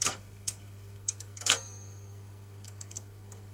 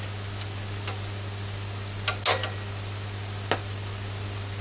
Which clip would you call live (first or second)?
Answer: second